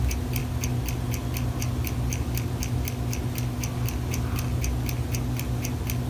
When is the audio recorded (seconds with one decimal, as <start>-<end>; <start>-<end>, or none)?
0.0-6.1